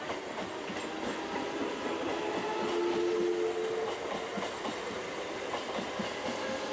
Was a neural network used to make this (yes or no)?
no